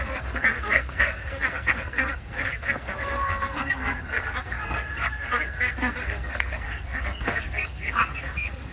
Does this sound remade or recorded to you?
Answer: remade